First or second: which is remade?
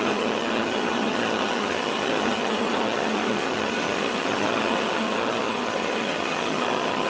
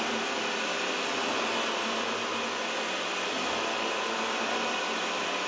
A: first